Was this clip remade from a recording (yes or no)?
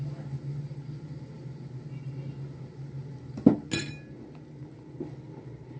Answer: no